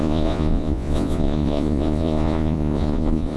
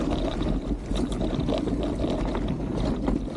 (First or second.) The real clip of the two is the second